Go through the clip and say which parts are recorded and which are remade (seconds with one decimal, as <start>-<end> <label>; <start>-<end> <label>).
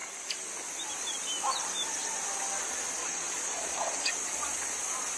0.0-3.0 recorded; 3.0-4.1 remade; 4.1-5.2 recorded